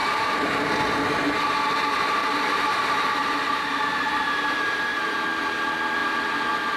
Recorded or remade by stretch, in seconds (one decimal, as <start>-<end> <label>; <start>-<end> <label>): 0.0-0.7 remade; 0.7-2.2 recorded; 2.2-5.2 remade; 5.2-6.8 recorded